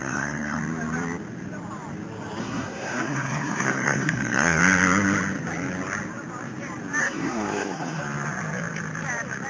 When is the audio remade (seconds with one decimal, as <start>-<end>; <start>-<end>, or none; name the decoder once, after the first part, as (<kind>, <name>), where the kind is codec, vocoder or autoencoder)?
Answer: 0.0-0.6 (codec, SNAC); 2.4-4.6; 7.0-8.0